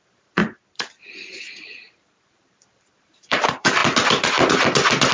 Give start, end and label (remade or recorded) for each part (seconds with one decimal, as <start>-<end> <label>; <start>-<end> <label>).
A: 0.0-0.4 remade; 0.4-1.0 recorded; 1.0-3.8 remade; 3.8-5.1 recorded